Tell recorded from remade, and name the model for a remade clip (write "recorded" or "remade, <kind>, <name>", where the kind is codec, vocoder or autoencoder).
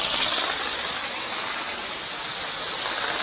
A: recorded